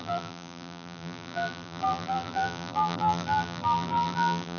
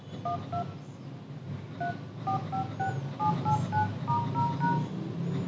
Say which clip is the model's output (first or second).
first